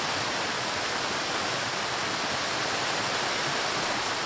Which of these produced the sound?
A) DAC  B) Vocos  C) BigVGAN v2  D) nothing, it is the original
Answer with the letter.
D